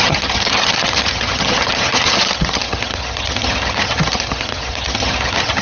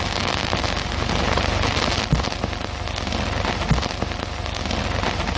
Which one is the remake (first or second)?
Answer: first